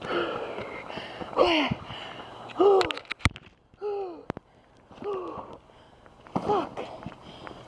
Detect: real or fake real